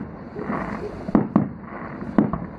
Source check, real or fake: real